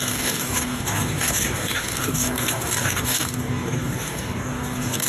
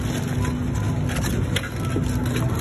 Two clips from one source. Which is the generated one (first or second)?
first